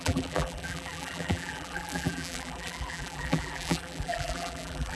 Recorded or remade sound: remade